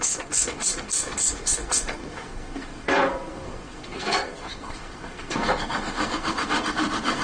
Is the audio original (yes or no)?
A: no